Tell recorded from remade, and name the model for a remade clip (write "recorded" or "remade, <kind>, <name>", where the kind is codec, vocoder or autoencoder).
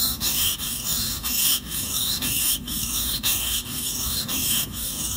remade, codec, DAC